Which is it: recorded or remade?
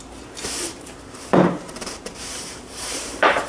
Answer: remade